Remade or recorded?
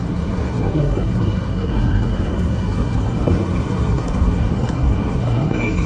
remade